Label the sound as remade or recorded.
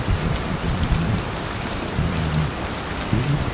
remade